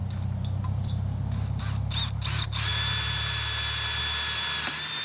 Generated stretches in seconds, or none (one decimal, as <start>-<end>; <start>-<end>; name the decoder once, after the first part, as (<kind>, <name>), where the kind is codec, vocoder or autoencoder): none